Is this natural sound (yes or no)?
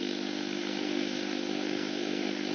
no